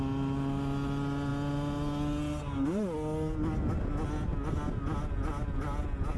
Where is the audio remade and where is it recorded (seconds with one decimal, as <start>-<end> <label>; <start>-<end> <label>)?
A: 0.0-6.2 recorded